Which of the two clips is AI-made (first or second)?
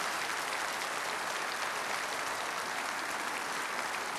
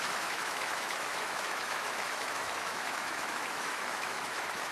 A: second